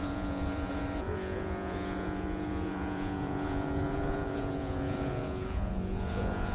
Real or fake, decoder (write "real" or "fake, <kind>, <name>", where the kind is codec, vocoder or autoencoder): fake, vocoder, Vocos